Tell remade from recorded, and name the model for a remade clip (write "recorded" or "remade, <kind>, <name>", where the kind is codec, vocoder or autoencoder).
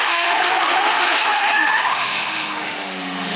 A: remade, autoencoder, DAC-VAE